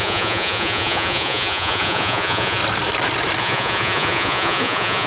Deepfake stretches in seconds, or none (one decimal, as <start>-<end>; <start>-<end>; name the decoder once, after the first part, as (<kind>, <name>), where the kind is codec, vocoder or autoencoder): 0.0-2.6 (vocoder, Vocos); 3.4-5.1